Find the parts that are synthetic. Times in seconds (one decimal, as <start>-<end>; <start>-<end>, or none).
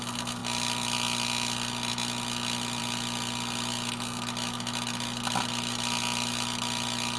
none